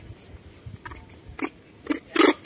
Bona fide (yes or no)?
yes